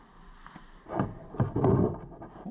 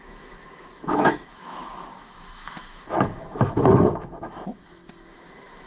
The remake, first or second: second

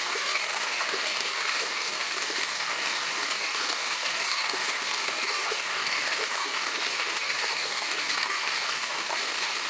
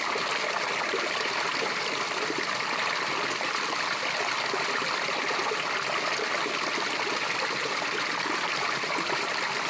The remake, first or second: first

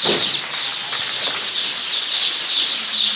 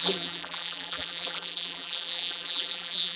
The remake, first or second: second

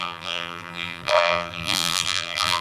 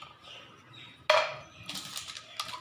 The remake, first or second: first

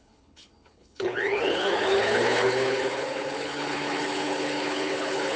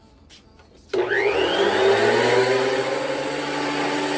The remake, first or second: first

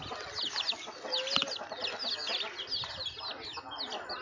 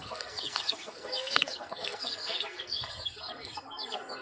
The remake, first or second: second